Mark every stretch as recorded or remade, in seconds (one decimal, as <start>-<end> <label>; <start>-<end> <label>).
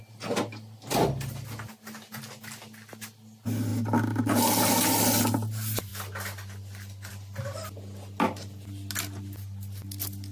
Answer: 0.0-10.3 recorded